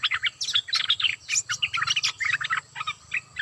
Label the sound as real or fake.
real